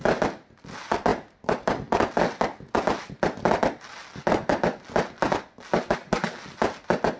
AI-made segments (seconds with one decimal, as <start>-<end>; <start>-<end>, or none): none

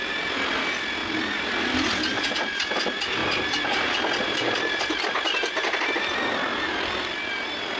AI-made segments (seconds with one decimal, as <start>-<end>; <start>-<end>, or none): none

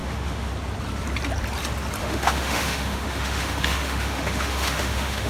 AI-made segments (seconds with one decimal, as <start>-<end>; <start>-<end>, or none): 0.0-0.5; 2.0-5.3

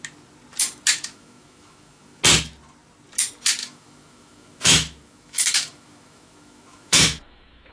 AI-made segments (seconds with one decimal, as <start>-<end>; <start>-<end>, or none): 0.9-2.2; 3.6-7.7

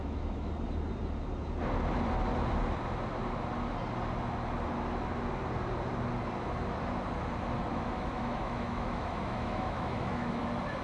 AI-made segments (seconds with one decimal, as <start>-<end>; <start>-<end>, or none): 0.0-0.5; 7.7-10.4

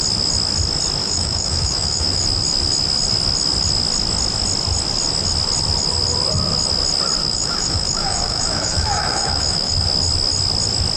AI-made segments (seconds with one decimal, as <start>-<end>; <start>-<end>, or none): 1.0-2.2; 7.2-9.7